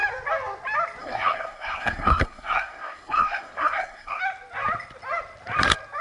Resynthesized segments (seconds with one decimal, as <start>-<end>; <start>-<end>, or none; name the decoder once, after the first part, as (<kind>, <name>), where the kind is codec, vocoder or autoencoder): 1.0-4.2 (codec, SNAC)